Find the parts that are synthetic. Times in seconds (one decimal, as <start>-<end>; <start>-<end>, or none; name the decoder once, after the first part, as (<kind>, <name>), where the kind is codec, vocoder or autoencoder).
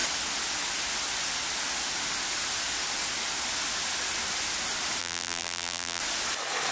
5.0-6.0 (vocoder, BigVGAN v2)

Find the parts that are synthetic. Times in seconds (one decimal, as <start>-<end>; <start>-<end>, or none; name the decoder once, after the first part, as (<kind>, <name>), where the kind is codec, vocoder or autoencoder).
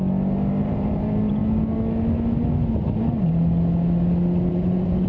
0.6-1.4 (vocoder, BigVGAN v2); 4.5-5.1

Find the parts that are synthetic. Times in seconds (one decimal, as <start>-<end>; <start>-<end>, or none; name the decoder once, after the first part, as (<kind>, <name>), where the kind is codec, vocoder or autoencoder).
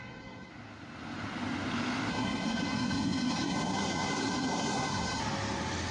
0.0-0.5 (codec, SNAC); 2.1-5.2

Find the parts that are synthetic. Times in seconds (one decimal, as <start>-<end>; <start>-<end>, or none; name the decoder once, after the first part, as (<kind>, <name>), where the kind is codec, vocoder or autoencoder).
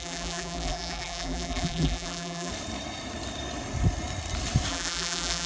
0.0-2.5 (vocoder, BigVGAN v2); 4.7-5.5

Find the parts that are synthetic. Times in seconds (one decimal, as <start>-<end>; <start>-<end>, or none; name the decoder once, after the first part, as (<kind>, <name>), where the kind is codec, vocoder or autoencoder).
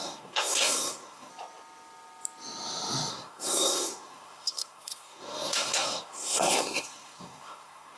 0.0-1.3 (codec, SNAC); 3.1-8.0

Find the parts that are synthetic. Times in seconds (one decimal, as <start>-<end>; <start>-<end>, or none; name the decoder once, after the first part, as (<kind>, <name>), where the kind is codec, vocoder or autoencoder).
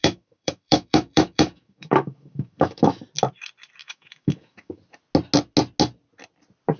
0.0-3.0 (autoencoder, DAC-VAE); 3.8-4.8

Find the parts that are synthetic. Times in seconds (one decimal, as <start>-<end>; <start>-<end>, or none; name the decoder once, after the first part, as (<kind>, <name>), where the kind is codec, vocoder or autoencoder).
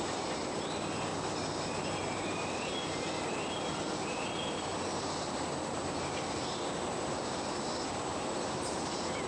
1.1-3.4 (vocoder, BigVGAN v2); 8.1-8.9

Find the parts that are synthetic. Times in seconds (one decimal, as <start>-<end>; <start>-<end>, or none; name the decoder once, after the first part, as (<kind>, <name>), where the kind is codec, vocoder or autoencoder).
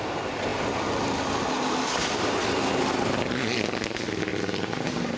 none